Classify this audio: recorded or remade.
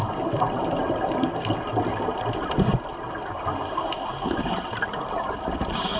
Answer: recorded